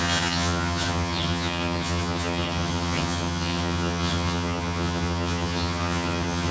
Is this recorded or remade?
remade